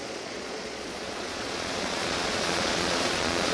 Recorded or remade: remade